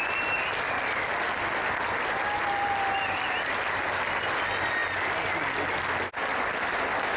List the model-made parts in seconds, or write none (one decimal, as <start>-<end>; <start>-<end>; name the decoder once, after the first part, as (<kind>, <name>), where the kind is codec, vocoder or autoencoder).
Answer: none